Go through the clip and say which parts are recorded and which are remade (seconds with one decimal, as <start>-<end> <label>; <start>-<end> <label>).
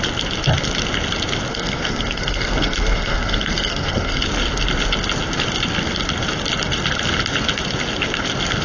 0.0-1.5 recorded; 1.5-4.2 remade; 4.2-8.6 recorded